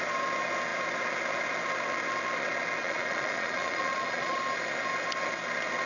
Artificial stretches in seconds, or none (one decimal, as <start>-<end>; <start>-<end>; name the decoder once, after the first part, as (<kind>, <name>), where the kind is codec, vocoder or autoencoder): 2.8-4.4 (vocoder, Vocos)